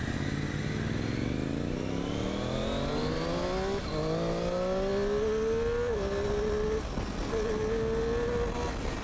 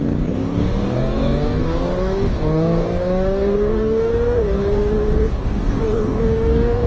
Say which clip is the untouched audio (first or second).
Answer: first